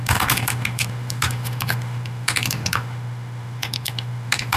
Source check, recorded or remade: remade